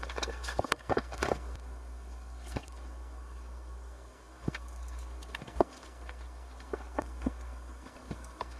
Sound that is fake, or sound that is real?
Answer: fake